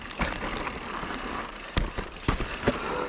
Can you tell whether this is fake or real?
real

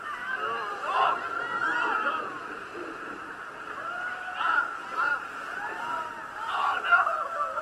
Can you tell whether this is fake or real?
real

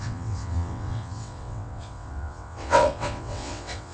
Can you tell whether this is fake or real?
fake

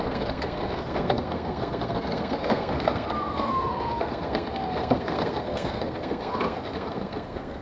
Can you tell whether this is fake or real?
fake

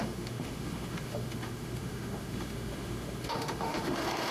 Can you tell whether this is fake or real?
fake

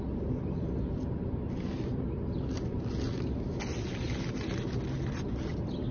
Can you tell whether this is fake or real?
real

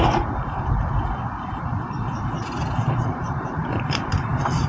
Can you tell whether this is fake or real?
fake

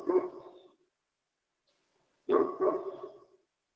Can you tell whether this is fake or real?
fake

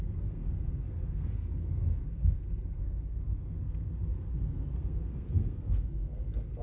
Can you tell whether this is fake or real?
fake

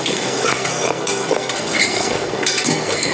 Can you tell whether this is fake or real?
fake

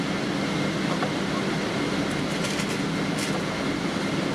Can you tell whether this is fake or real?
real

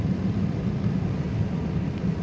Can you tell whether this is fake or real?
real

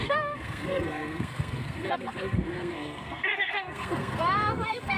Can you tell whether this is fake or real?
fake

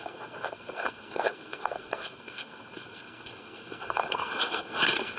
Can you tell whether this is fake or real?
fake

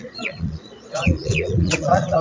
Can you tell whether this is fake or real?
fake